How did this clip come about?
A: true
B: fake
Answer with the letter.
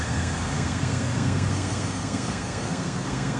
B